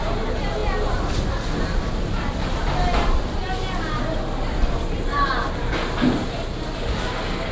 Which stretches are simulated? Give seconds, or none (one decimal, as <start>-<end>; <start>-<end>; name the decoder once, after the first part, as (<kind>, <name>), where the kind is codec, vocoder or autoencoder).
none

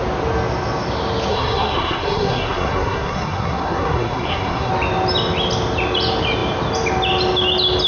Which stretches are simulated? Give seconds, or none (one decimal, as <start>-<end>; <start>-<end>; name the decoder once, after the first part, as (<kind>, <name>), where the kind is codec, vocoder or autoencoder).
1.3-4.7 (codec, SNAC)

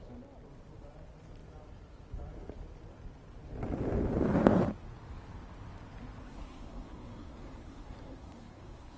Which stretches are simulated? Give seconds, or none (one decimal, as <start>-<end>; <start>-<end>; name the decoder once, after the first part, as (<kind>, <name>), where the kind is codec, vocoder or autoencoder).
6.2-9.0 (codec, SNAC)

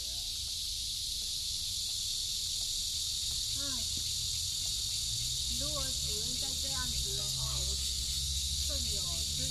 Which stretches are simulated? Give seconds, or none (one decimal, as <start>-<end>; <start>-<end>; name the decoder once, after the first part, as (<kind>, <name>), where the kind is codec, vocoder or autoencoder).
7.1-8.8 (codec, SNAC)

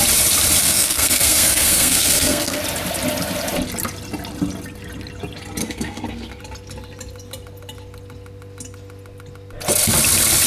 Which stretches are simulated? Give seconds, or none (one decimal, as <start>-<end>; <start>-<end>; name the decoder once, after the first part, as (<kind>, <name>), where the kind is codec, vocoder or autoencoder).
0.6-2.6 (codec, SNAC); 5.6-6.4

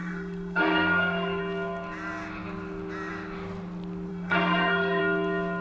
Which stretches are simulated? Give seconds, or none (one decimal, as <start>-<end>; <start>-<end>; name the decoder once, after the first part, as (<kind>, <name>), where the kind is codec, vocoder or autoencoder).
0.0-1.4 (codec, SNAC); 4.1-5.0

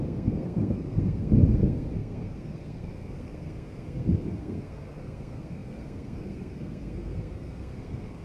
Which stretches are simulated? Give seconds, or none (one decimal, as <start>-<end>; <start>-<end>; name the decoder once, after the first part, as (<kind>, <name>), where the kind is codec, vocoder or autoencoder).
0.0-8.2 (codec, SNAC)

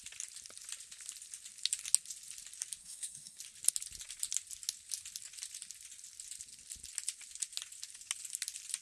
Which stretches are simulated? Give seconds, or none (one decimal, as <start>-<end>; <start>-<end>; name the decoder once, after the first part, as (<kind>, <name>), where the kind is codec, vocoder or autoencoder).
2.8-3.4 (codec, SNAC)